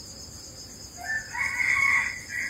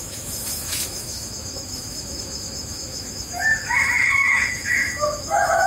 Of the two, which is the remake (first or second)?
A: second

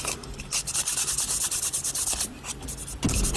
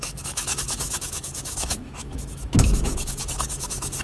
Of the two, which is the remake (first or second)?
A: second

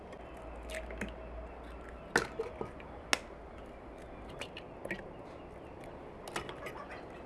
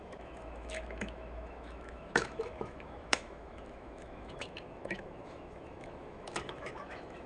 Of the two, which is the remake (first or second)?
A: second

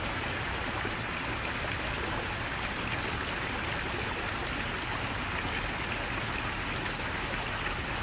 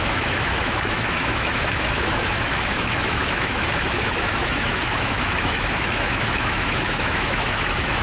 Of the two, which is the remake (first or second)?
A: second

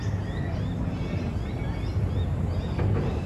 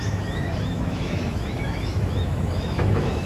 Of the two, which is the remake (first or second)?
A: second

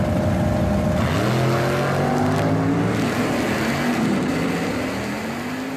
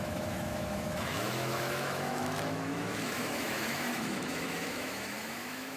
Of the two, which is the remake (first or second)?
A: second